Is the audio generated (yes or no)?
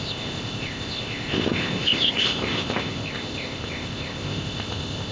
yes